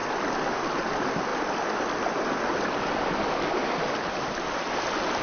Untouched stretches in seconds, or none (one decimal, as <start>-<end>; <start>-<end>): 0.0-5.2